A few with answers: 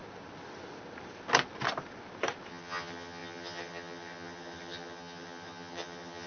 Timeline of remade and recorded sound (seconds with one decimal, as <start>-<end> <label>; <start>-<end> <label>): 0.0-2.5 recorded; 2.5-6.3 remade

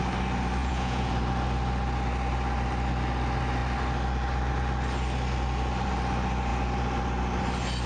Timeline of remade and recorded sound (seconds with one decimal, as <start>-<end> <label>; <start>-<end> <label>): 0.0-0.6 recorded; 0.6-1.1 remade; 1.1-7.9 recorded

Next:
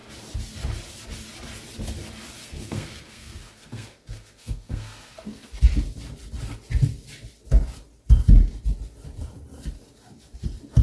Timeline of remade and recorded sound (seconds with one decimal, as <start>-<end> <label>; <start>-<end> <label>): 0.0-2.4 recorded; 2.4-5.5 remade; 5.5-10.8 recorded

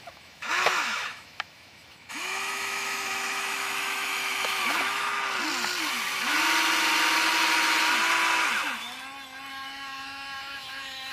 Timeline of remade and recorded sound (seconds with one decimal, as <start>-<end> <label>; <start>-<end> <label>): 0.0-5.1 remade; 5.1-9.5 recorded; 9.5-11.1 remade

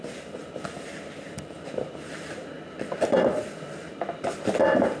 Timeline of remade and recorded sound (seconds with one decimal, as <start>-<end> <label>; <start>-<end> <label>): 0.0-5.0 recorded

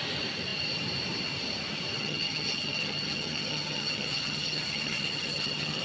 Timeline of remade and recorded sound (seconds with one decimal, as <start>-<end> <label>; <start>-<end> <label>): 0.0-2.0 recorded; 2.0-5.8 remade